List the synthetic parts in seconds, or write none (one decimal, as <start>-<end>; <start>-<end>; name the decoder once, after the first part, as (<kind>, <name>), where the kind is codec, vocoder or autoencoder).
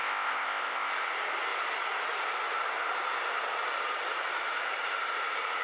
0.0-0.9 (codec, ZipCodec)